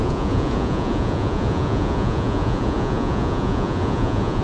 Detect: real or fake fake